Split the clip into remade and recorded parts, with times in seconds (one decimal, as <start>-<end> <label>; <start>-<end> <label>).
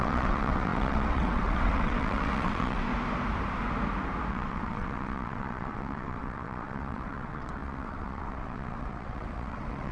0.0-2.9 remade; 2.9-4.3 recorded; 4.3-9.9 remade